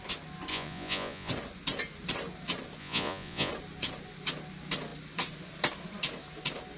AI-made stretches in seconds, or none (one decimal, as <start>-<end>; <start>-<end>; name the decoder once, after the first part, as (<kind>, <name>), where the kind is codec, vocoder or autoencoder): 0.5-1.3 (vocoder, Vocos); 2.8-3.5